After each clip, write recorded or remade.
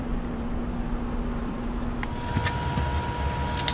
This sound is remade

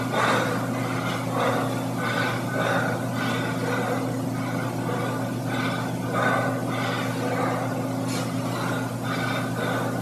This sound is recorded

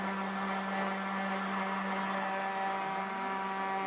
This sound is recorded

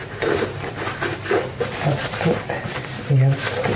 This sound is remade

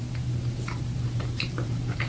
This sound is remade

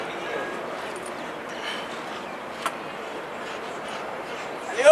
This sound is remade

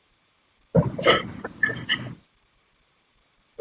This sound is remade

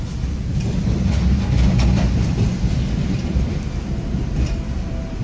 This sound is recorded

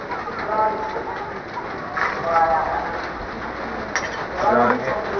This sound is recorded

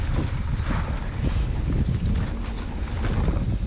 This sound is recorded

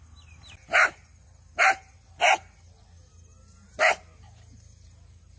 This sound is recorded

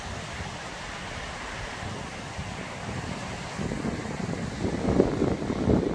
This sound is recorded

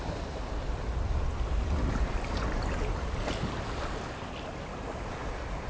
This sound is recorded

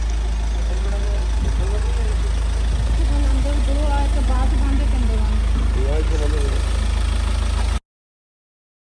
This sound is recorded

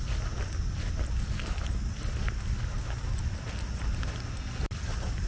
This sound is recorded